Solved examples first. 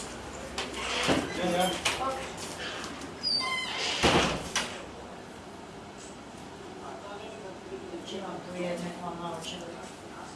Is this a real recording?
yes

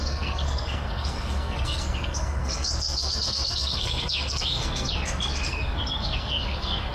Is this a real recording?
no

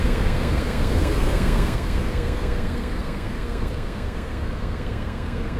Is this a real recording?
no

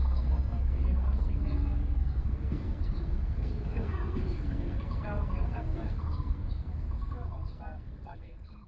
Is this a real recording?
no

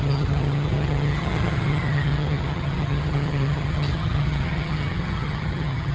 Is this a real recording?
no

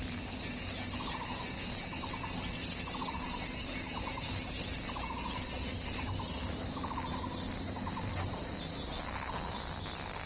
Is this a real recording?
yes